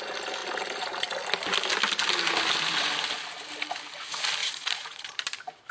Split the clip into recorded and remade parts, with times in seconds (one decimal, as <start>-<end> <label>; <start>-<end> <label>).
0.0-4.4 recorded; 4.4-5.1 remade; 5.1-5.7 recorded